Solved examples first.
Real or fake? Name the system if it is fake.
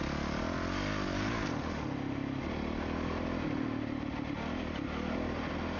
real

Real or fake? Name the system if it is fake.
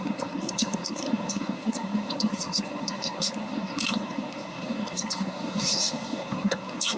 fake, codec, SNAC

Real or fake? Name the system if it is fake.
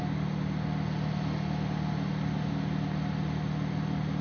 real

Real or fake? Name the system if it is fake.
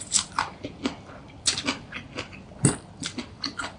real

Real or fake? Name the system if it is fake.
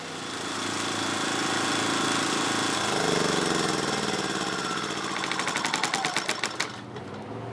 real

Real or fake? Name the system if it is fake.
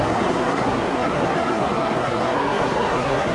fake, codec, SNAC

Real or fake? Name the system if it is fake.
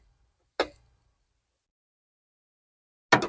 real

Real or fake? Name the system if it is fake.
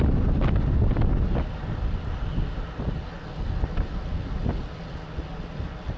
real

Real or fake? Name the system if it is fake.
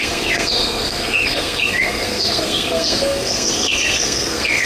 fake, codec, SNAC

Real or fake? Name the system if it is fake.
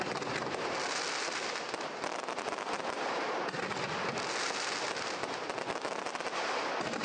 real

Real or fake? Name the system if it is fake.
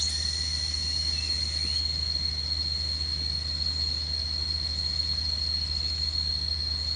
real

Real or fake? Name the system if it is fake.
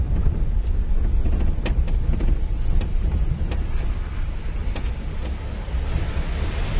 real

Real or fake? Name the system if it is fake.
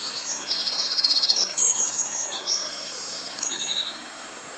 fake, codec, SNAC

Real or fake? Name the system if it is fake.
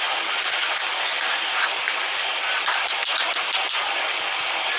real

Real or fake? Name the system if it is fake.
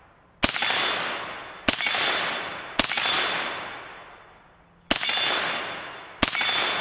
real